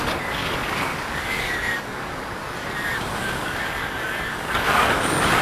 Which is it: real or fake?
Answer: fake